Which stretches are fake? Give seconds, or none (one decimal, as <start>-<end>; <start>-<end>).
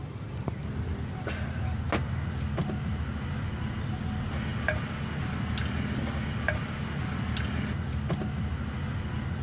0.6-1.2